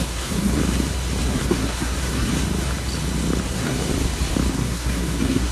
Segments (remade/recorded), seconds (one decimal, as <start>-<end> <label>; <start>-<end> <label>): 0.0-0.6 remade; 0.6-1.2 recorded; 1.2-2.3 remade; 2.3-3.4 recorded; 3.4-3.9 remade; 3.9-4.5 recorded; 4.5-5.5 remade